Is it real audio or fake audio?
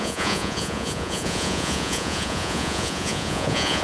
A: fake